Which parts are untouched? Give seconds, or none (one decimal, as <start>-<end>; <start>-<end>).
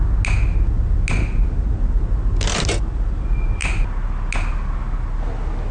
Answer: 0.0-5.7